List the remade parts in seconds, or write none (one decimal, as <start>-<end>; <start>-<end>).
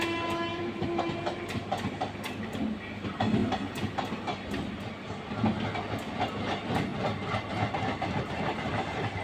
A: 0.5-1.0